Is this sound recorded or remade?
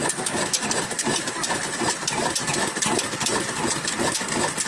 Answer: recorded